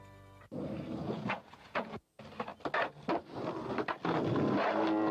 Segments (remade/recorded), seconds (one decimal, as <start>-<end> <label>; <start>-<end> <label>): 0.0-1.0 recorded; 1.0-2.1 remade; 2.1-5.1 recorded